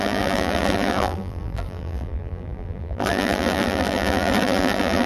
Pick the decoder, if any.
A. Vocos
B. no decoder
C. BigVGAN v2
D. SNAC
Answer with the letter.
C